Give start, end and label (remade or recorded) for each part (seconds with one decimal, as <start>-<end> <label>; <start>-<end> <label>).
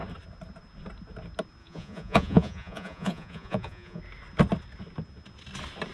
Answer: 0.0-1.6 recorded; 1.6-4.0 remade; 4.0-5.9 recorded